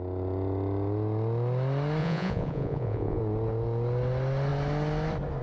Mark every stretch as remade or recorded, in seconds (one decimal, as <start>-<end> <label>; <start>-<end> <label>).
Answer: 0.0-2.0 recorded; 2.0-3.2 remade; 3.2-5.4 recorded